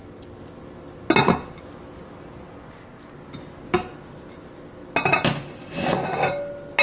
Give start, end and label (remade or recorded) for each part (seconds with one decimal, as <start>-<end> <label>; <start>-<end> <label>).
0.0-6.8 recorded